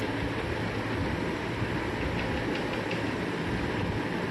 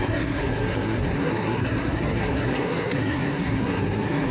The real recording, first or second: first